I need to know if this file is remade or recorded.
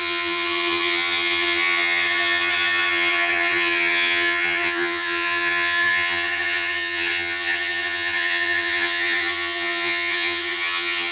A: remade